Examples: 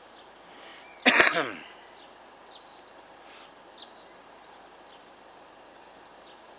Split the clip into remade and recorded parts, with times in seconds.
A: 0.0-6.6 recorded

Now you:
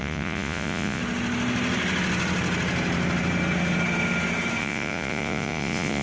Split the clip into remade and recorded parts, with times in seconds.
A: 0.0-1.0 remade; 1.0-4.6 recorded; 4.6-6.0 remade